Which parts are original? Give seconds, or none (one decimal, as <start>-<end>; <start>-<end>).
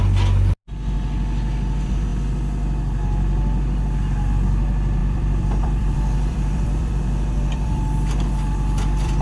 0.0-5.0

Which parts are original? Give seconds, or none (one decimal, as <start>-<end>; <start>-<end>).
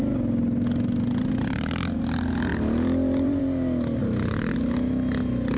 0.0-2.5; 3.4-5.6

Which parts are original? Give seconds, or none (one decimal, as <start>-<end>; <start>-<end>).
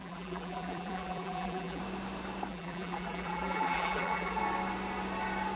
1.8-2.5; 4.4-5.6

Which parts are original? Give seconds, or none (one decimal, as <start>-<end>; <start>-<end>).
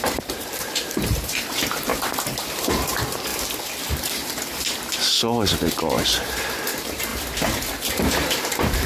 1.9-2.4; 3.3-4.0; 7.1-7.9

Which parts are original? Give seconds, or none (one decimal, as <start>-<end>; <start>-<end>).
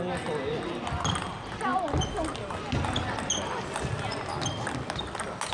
0.0-5.5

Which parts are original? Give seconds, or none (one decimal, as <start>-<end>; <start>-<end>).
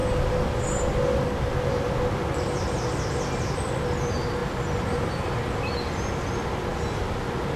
0.0-7.6